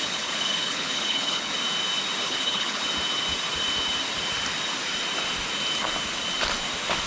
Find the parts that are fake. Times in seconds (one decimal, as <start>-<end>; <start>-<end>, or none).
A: 0.0-1.5; 2.2-2.8